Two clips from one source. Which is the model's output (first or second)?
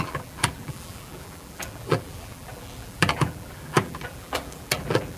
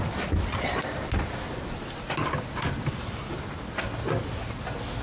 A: first